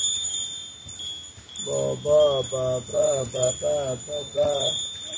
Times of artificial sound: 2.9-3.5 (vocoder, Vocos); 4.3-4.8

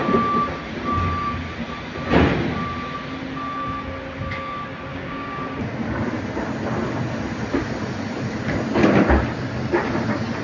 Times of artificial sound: 4.9-5.4 (codec, DAC)

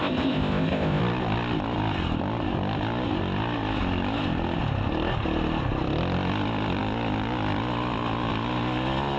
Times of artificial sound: 0.0-1.0 (codec, ZipCodec)

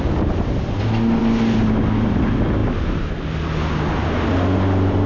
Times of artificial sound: none